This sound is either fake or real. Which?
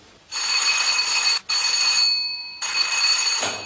real